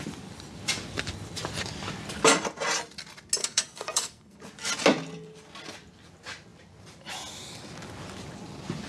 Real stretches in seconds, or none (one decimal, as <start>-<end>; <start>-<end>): 0.0-3.4; 4.4-8.9